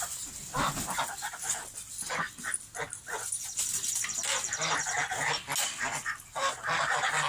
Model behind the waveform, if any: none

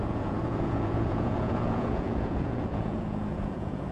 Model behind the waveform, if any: vocoder, Vocos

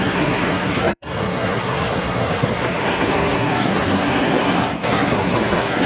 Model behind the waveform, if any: codec, SNAC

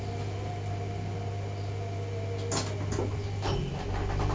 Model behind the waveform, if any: none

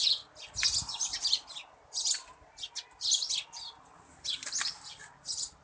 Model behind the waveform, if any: none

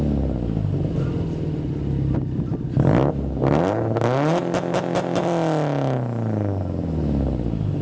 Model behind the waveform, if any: none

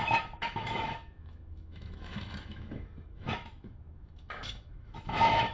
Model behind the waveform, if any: autoencoder, DAC-VAE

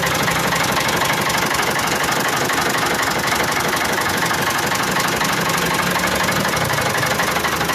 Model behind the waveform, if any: none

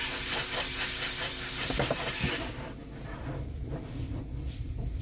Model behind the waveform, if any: vocoder, BigVGAN v2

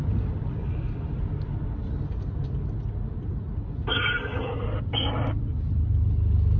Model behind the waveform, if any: none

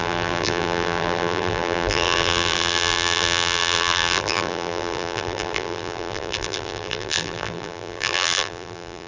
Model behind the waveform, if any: vocoder, BigVGAN v2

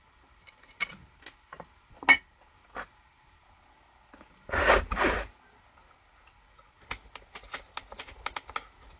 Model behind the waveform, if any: none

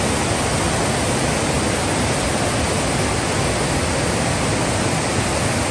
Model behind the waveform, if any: none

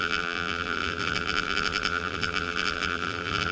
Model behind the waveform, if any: vocoder, BigVGAN v2